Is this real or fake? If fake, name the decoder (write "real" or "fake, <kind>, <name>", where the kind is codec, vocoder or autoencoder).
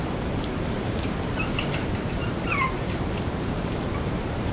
fake, vocoder, BigVGAN v2